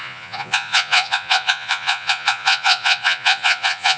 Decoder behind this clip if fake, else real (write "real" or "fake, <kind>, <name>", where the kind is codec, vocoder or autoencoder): fake, vocoder, Vocos